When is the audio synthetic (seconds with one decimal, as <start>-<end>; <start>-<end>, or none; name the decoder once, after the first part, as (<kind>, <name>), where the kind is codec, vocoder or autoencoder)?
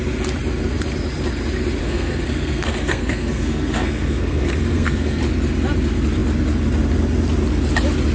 1.8-5.2 (codec, SNAC)